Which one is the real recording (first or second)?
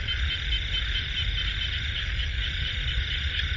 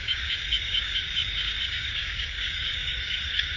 first